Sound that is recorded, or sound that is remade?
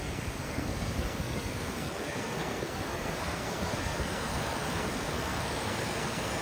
remade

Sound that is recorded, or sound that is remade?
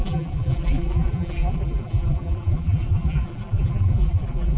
remade